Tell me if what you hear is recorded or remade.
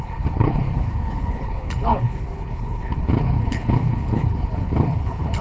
remade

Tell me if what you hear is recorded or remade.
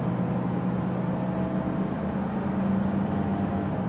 recorded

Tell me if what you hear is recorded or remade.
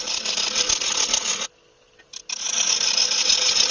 recorded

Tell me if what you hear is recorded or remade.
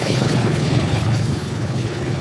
remade